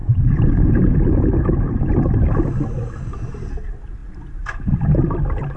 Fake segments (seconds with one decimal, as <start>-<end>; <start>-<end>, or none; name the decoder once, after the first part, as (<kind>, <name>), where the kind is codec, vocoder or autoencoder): 0.0-0.8 (vocoder, Vocos)